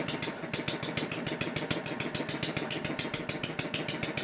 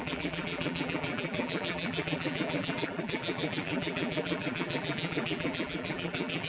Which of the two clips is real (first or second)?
first